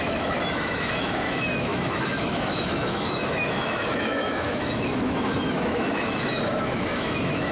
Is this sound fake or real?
fake